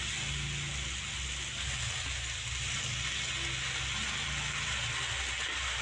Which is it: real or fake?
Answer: real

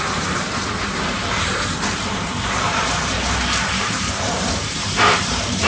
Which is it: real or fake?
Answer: fake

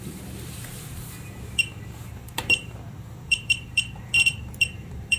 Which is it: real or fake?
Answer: fake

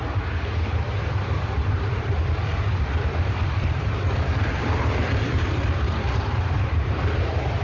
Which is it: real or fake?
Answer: fake